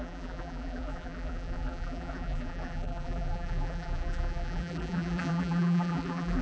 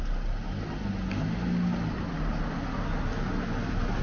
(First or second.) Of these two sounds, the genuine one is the second